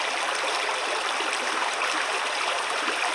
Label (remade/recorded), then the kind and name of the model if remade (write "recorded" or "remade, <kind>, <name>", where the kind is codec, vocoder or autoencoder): remade, vocoder, BigVGAN v2